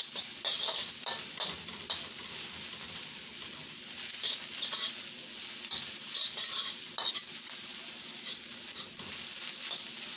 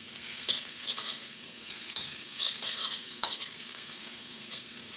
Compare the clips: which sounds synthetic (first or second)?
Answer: second